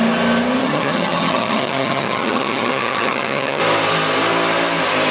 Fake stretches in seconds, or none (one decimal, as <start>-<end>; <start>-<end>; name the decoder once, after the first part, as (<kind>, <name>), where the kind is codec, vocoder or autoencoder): 0.6-3.6 (vocoder, HiFi-GAN)